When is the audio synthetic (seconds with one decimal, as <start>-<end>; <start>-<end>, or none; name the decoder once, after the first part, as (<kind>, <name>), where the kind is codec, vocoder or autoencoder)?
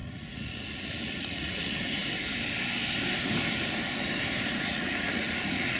0.0-2.0 (vocoder, Vocos); 4.4-5.8